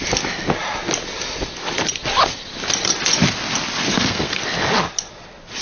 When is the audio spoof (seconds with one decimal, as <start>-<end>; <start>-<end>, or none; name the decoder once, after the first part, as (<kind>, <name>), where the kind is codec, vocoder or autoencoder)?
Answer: 3.9-4.4 (codec, SNAC)